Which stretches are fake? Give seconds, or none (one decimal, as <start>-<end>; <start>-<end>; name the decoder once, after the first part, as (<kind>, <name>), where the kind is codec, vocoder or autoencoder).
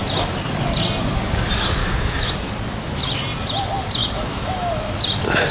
1.8-2.3 (autoencoder, DAC-VAE); 4.0-5.0